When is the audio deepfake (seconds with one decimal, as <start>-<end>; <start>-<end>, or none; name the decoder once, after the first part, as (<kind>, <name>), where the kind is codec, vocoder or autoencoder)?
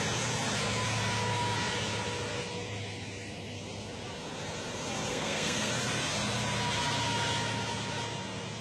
5.1-5.7 (codec, SNAC)